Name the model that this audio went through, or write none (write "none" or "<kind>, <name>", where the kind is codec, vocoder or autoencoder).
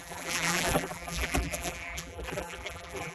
vocoder, BigVGAN v2